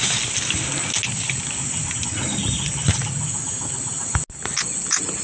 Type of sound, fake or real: real